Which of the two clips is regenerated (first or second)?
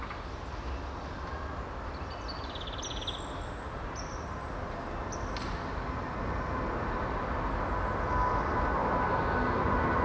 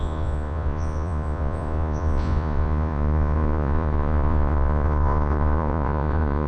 second